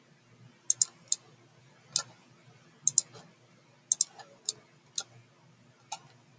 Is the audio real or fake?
real